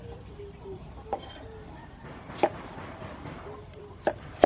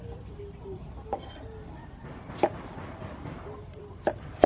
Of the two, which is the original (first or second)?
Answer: second